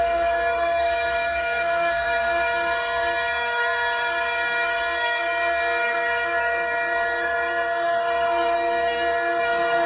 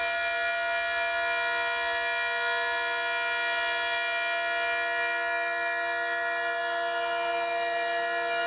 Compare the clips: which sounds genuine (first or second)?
second